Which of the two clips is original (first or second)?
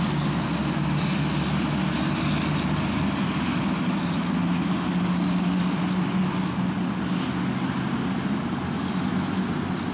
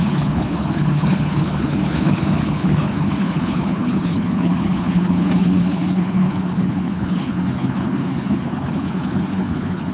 first